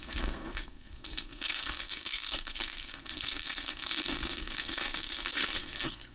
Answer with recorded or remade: remade